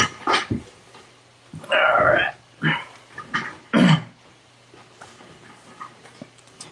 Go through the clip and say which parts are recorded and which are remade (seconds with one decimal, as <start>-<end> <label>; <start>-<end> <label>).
0.0-6.7 recorded